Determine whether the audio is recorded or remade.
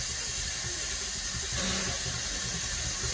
recorded